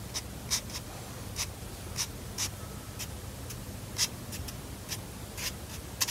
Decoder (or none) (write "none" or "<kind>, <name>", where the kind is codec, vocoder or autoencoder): none